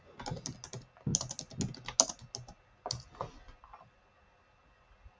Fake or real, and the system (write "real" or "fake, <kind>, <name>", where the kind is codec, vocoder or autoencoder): real